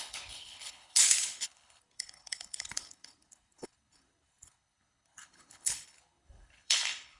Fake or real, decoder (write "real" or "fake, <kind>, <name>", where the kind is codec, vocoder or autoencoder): fake, codec, HILCodec